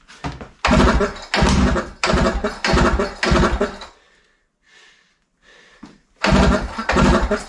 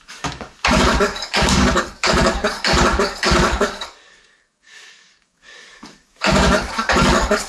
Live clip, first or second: first